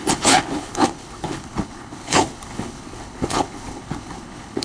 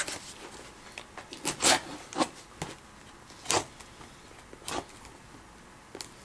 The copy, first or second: first